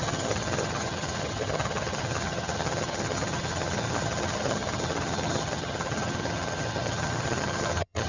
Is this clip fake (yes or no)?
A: yes